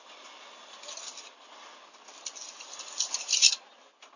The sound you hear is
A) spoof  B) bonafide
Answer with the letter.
B